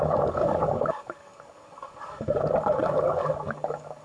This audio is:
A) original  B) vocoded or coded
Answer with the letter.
B